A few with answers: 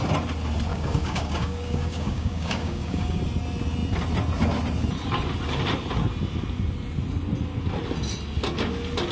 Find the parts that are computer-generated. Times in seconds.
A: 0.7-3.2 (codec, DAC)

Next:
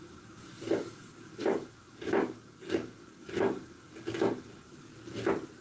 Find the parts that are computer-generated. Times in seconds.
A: 0.0-4.9 (codec, DAC)

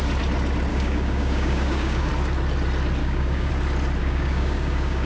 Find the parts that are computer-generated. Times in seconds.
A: 0.7-2.1 (codec, DAC); 3.0-3.5; 4.0-5.1

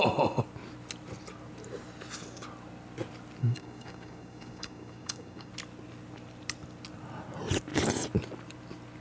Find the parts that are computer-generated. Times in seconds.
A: 3.4-5.5 (codec, DAC)